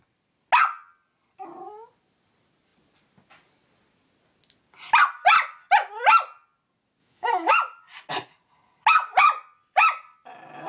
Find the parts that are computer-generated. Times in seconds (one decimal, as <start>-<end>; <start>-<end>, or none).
7.0-7.5